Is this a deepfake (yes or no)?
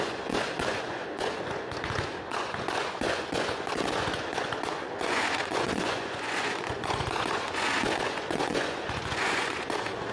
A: yes